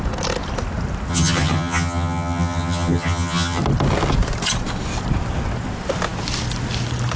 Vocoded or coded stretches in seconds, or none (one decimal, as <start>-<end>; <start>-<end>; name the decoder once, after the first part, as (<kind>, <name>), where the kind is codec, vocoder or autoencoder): 1.1-3.6 (vocoder, HiFi-GAN)